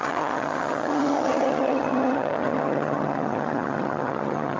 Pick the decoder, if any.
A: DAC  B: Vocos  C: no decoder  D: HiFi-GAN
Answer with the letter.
D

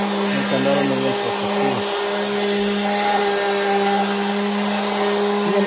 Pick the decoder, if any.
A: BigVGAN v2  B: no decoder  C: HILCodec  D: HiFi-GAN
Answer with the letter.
B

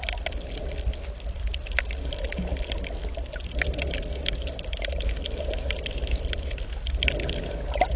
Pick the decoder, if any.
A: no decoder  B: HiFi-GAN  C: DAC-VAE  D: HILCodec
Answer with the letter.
A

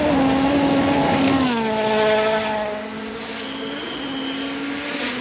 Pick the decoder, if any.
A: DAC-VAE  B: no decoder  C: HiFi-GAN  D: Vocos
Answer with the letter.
B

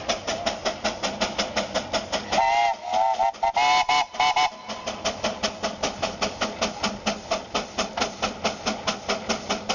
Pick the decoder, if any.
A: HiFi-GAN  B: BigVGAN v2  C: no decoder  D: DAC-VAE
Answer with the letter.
C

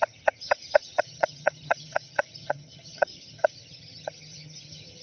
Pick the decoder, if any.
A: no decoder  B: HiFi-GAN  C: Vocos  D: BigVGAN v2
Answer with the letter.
B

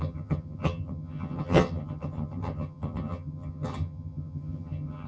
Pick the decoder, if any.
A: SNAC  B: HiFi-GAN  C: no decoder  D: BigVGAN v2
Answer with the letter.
B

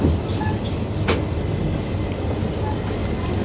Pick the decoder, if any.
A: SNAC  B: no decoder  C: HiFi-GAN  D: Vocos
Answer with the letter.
B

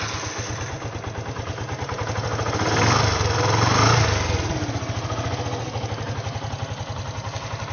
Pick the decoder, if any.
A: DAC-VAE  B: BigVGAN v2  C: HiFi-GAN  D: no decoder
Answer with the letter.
D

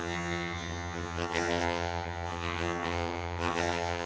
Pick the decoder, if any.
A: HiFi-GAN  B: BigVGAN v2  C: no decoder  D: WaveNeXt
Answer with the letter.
A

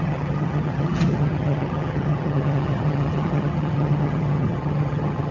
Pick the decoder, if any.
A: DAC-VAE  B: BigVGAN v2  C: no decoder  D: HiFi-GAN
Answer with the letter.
D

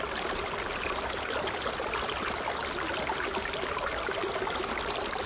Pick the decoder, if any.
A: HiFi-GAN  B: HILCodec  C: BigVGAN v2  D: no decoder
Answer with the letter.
D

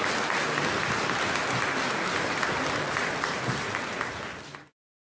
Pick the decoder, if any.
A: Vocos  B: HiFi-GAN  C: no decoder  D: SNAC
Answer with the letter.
C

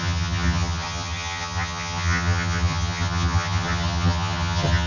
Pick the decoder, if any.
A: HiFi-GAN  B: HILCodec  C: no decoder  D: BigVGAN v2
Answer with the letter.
A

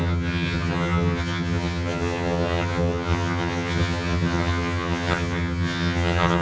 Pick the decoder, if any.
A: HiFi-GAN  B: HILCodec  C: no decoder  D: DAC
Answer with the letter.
A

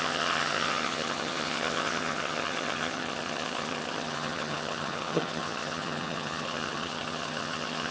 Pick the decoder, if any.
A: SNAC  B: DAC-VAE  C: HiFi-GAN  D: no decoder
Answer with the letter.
C